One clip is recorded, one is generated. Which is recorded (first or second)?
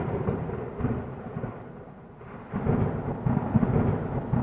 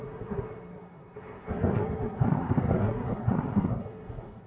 first